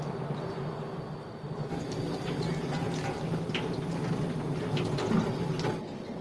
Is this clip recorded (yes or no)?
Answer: yes